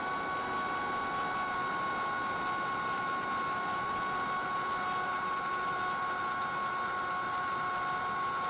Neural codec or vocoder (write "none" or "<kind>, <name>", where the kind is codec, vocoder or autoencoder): none